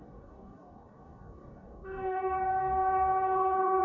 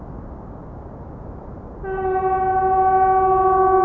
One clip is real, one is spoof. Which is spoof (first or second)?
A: first